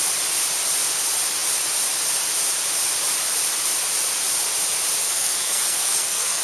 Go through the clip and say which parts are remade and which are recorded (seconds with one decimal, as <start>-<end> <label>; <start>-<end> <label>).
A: 0.0-5.0 recorded; 5.0-6.4 remade